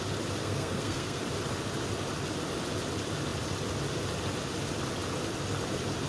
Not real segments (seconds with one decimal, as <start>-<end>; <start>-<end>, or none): 0.4-1.2